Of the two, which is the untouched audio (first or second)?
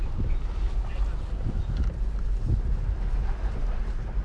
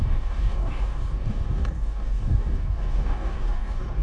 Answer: first